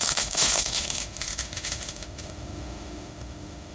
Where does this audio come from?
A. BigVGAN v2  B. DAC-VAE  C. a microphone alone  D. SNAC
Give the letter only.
B